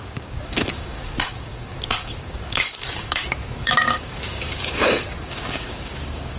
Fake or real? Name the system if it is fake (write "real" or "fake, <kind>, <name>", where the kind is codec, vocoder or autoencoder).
fake, codec, DAC